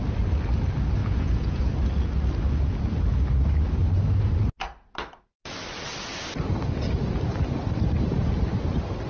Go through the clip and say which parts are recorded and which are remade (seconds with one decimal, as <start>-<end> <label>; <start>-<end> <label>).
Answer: 0.0-1.0 recorded; 1.0-1.6 remade; 1.6-9.1 recorded